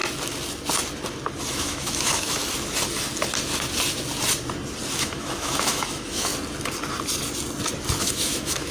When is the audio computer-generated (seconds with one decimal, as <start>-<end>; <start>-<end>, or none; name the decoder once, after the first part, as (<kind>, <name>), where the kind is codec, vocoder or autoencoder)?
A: 1.5-2.4 (autoencoder, DAC-VAE); 4.9-6.3; 8.0-8.7